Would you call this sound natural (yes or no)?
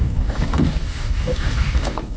no